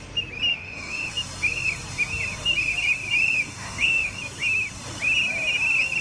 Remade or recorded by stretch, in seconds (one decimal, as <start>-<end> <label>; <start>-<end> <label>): 0.0-0.5 recorded; 0.5-1.1 remade; 1.1-3.5 recorded; 3.5-4.2 remade; 4.2-6.0 recorded